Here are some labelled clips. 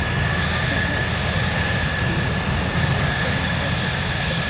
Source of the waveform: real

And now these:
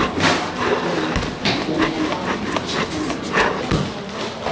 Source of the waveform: real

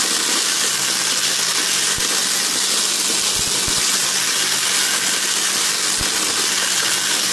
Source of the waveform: real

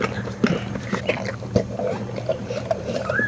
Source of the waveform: fake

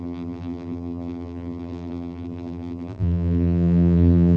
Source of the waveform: fake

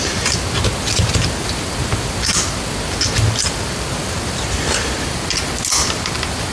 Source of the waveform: real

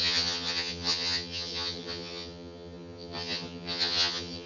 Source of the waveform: fake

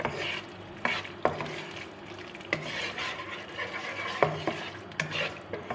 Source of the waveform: real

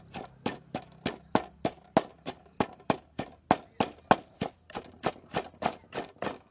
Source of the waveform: real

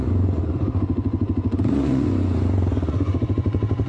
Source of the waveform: fake